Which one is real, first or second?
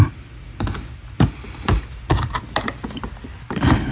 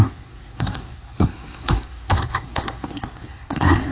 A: first